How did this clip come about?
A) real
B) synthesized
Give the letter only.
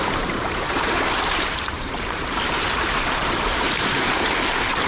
B